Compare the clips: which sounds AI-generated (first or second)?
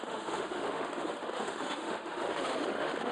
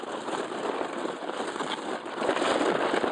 first